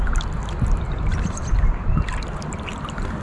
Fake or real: real